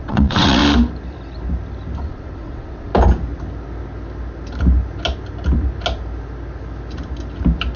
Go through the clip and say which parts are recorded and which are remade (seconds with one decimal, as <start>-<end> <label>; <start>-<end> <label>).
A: 0.0-0.6 remade; 0.6-2.0 recorded; 2.0-2.9 remade; 2.9-7.8 recorded